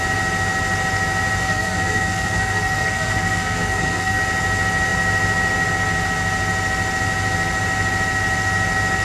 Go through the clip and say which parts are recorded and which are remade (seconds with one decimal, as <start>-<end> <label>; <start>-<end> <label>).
0.0-1.4 recorded; 1.4-4.2 remade; 4.2-9.0 recorded

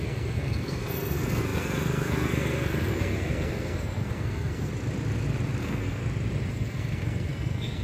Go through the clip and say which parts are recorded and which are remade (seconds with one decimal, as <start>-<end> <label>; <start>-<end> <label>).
0.0-4.7 remade; 4.7-5.6 recorded; 5.6-6.0 remade; 6.0-6.5 recorded; 6.5-7.8 remade

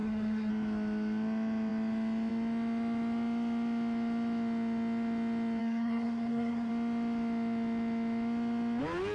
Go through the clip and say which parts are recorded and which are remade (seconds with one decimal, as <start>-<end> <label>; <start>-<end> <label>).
0.0-0.5 remade; 0.5-5.6 recorded; 5.6-6.7 remade; 6.7-9.1 recorded

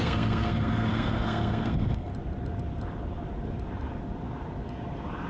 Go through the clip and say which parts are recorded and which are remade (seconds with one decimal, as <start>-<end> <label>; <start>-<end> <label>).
0.0-2.1 remade; 2.1-5.3 recorded

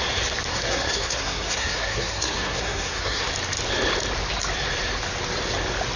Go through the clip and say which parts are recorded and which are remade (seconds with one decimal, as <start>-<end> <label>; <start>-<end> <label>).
0.0-0.5 recorded; 0.5-3.3 remade; 3.3-6.0 recorded

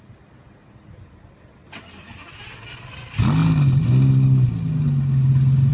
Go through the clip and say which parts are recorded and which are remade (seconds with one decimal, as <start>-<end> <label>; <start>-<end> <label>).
0.0-5.7 recorded

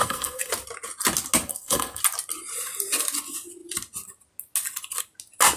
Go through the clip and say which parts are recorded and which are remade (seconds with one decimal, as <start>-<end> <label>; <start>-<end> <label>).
0.0-0.5 remade; 0.5-1.5 recorded; 1.5-2.0 remade; 2.0-5.6 recorded